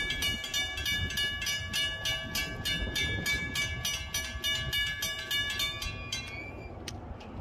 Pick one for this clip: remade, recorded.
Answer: recorded